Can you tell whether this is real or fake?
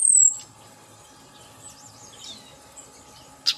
real